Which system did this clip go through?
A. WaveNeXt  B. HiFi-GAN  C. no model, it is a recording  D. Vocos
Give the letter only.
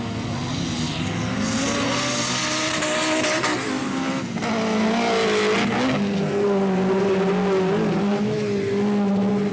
C